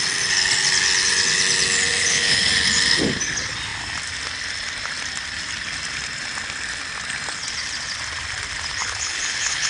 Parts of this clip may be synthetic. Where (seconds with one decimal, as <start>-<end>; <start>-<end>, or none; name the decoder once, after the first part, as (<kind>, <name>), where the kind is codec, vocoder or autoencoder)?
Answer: 2.0-2.5 (codec, HILCodec); 8.8-9.7